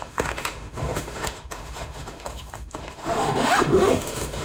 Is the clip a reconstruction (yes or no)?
yes